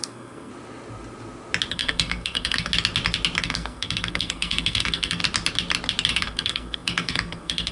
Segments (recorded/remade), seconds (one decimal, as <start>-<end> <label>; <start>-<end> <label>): 0.0-0.5 remade; 0.5-1.7 recorded; 1.7-2.7 remade; 2.7-3.4 recorded; 3.4-5.2 remade; 5.2-6.1 recorded; 6.1-7.7 remade